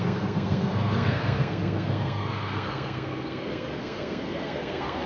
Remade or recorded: remade